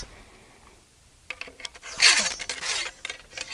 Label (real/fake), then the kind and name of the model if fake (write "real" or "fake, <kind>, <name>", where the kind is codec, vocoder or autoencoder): real